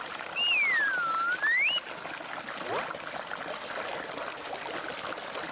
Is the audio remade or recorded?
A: recorded